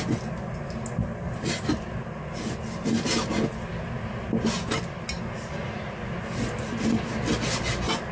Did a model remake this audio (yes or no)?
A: no